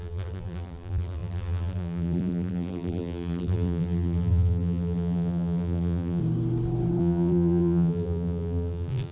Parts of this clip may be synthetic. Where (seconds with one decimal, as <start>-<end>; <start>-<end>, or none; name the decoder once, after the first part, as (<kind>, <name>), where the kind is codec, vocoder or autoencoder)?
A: 0.0-6.2 (vocoder, BigVGAN v2); 7.0-9.1